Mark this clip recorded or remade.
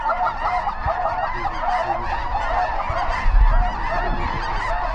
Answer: recorded